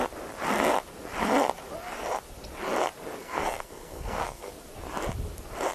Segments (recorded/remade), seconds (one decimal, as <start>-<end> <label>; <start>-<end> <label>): 0.0-3.2 recorded; 3.2-4.5 remade; 4.5-5.7 recorded